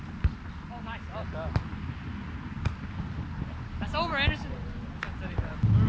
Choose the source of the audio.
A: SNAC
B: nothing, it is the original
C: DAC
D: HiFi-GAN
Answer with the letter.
B